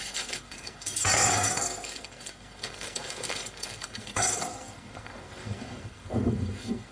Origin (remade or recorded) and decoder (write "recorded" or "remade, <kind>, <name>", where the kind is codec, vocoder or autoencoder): remade, codec, SNAC